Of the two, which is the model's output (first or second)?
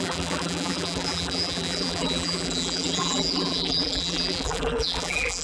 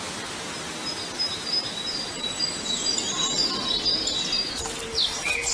first